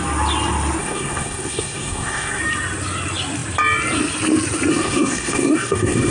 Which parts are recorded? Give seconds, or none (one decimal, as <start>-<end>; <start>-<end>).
0.0-0.8; 2.4-4.7